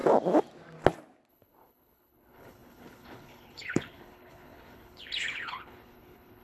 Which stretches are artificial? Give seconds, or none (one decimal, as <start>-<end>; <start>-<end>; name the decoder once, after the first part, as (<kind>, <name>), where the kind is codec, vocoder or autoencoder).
1.3-6.4 (codec, HILCodec)